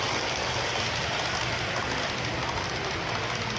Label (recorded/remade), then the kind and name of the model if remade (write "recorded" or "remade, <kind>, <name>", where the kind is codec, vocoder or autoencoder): recorded